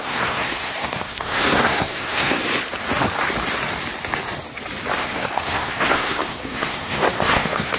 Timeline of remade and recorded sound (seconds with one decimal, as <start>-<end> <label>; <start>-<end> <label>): 0.0-2.4 remade; 2.4-5.0 recorded; 5.0-7.8 remade